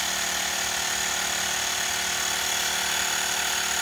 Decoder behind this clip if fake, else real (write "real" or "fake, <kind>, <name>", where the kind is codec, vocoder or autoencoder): real